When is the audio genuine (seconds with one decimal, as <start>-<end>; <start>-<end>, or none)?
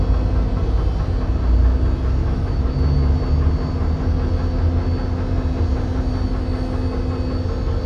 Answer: 0.0-2.2; 2.7-7.9